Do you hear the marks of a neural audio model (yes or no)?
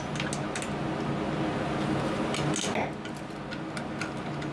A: no